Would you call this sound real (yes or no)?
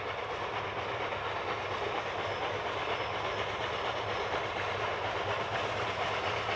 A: yes